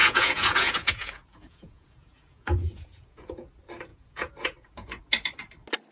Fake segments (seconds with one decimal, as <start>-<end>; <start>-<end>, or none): 0.0-3.5; 3.9-5.0

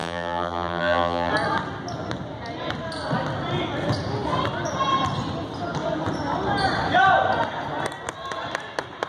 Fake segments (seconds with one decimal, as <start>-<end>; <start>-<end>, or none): 0.0-1.3

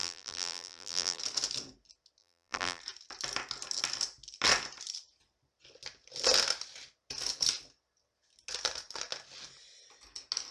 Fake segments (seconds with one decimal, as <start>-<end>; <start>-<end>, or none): 0.0-1.2; 2.2-2.8

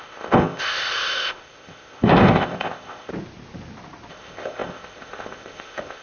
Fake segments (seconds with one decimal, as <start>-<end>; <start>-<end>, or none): 0.0-3.1; 4.1-6.0

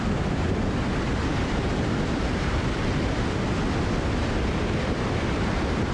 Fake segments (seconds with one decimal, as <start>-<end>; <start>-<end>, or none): none